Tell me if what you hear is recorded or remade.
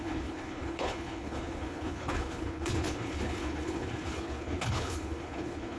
remade